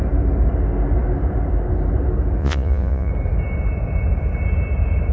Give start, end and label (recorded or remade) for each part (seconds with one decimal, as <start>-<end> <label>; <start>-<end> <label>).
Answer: 0.0-2.4 recorded; 2.4-3.1 remade; 3.1-5.1 recorded